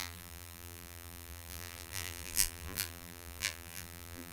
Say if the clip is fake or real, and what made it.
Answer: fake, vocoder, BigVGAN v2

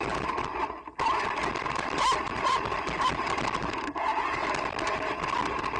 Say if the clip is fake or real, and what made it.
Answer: real